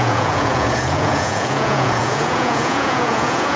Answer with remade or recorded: remade